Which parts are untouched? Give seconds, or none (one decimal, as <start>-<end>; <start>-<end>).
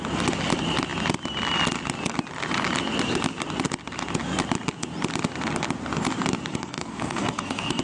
0.0-6.5